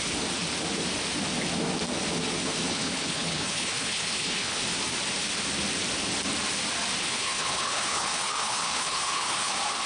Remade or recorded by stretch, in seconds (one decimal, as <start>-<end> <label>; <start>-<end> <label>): 0.0-2.7 recorded; 2.7-4.6 remade; 4.6-7.0 recorded; 7.0-9.5 remade; 9.5-9.9 recorded